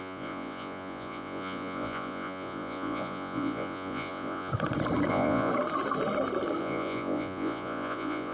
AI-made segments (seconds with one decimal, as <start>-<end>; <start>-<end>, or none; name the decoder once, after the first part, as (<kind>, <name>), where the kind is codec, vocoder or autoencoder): 0.0-4.5 (vocoder, Vocos); 5.1-5.5; 6.6-8.3